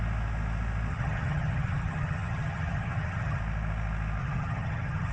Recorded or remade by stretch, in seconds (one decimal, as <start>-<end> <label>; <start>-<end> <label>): 0.0-0.9 recorded; 0.9-3.4 remade; 3.4-4.2 recorded; 4.2-5.1 remade